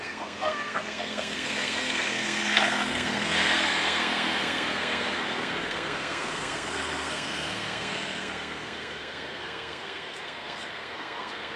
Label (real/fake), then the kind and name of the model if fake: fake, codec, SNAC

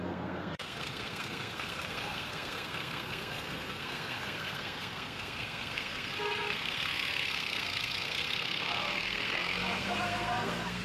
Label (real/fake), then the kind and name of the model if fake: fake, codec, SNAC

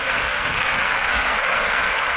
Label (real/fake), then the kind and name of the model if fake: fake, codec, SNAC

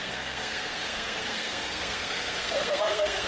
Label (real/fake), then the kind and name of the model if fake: fake, codec, SNAC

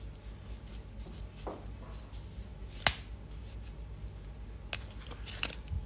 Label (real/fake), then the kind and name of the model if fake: real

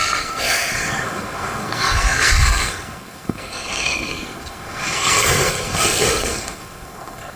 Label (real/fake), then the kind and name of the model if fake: fake, codec, SNAC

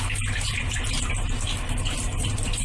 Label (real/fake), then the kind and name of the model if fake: real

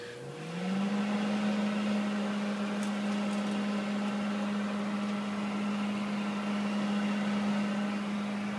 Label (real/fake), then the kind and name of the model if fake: real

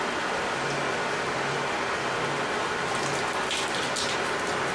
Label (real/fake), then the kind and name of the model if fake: real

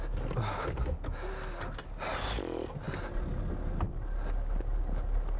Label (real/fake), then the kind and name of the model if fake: real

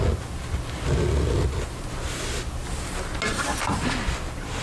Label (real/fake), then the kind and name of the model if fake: real